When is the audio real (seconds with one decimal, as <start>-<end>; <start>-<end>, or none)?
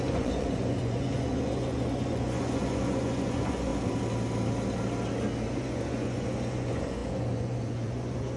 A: 3.7-5.5